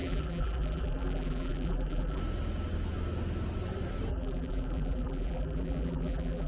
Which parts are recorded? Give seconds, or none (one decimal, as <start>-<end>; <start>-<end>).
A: 2.2-4.1